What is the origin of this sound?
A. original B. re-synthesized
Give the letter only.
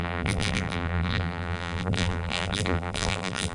B